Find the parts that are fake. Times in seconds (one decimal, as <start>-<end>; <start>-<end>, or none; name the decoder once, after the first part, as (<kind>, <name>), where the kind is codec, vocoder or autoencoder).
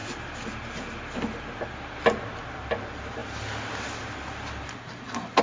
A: none